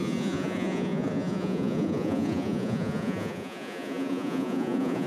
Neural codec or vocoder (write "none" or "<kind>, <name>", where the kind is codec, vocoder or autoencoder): vocoder, Vocos